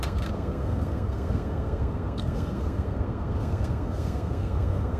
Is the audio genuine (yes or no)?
no